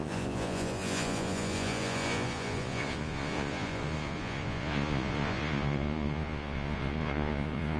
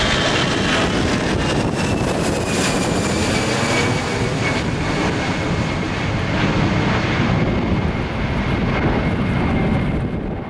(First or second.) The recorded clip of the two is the second